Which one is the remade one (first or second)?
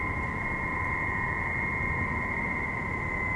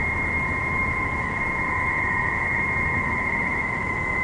second